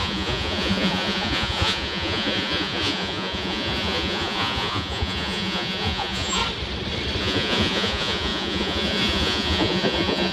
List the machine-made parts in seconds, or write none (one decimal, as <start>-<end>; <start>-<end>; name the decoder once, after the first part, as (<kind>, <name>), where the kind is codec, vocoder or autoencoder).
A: 0.0-6.4 (vocoder, Vocos); 7.2-10.3

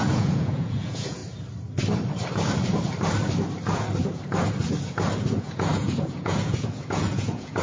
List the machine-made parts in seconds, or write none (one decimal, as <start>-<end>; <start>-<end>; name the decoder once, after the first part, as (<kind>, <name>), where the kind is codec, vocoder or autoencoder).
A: 0.0-1.2 (vocoder, Vocos); 5.3-7.6

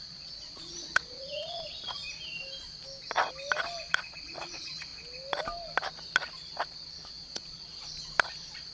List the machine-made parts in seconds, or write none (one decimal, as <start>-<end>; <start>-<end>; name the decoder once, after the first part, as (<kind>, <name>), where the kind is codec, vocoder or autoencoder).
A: 0.0-2.0 (vocoder, Vocos); 3.9-4.9; 7.1-7.7

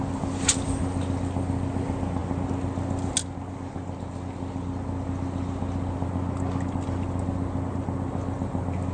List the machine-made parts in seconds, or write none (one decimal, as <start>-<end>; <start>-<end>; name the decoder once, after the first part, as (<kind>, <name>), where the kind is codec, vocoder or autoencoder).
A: none